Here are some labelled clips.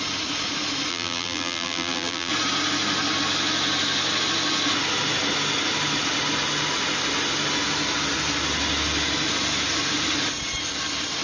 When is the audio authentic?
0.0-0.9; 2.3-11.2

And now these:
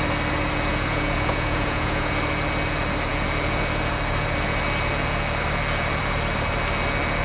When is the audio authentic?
0.0-0.7; 2.1-7.2

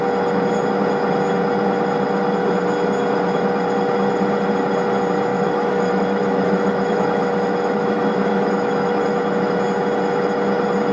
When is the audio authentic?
0.0-5.3; 9.0-10.9